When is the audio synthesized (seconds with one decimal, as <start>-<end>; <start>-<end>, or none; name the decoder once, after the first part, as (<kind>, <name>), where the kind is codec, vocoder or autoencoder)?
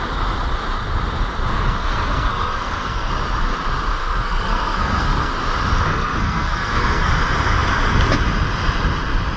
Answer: 1.5-3.1 (codec, SNAC); 4.0-5.3; 5.9-7.1